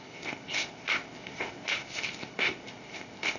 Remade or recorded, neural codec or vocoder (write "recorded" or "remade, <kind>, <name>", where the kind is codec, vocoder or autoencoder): remade, codec, ZipCodec